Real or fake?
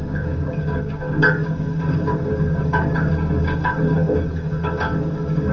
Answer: fake